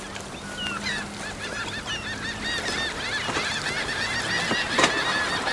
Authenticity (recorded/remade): recorded